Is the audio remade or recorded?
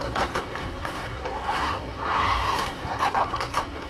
remade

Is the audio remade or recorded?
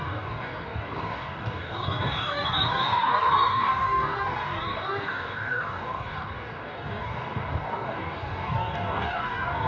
remade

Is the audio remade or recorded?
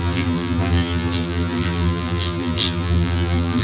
remade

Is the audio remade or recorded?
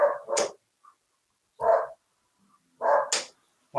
recorded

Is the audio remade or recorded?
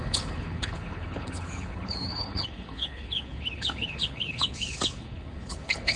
remade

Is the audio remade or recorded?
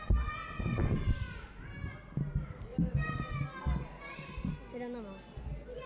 recorded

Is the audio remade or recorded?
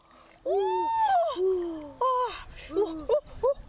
recorded